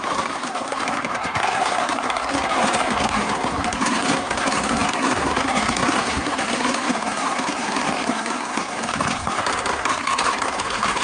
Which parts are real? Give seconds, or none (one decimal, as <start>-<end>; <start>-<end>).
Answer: none